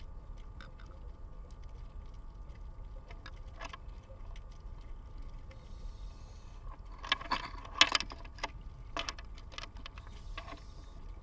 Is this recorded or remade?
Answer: recorded